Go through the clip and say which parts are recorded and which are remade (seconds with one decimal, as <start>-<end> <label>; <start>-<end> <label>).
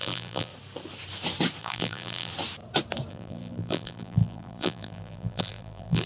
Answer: 0.0-0.5 remade; 0.5-1.6 recorded; 1.6-2.3 remade; 2.3-3.1 recorded; 3.1-6.1 remade